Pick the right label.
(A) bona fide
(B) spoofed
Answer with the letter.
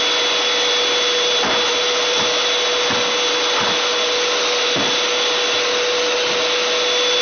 A